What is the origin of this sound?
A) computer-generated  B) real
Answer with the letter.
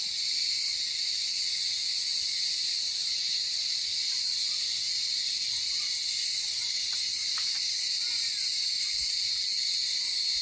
B